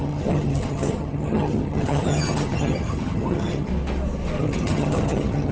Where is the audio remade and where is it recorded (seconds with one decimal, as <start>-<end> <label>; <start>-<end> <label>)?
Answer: 0.0-3.7 remade; 3.7-4.4 recorded; 4.4-5.5 remade